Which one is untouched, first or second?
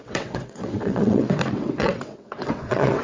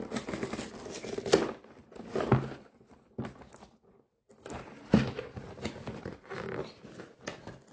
second